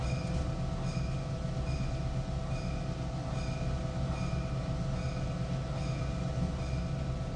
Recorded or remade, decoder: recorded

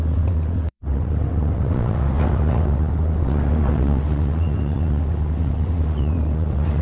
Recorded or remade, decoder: remade, vocoder, WaveNeXt